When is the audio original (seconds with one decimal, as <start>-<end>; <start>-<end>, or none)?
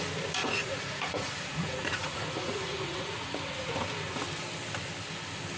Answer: 0.0-0.4; 3.8-5.6